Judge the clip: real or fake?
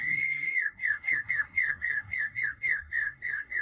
fake